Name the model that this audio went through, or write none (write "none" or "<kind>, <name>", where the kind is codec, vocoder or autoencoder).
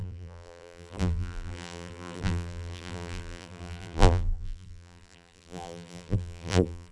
vocoder, BigVGAN v2